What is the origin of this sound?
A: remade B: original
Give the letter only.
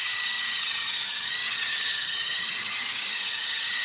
A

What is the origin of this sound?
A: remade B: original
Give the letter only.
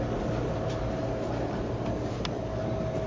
B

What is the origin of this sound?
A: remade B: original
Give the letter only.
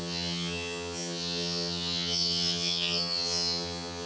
A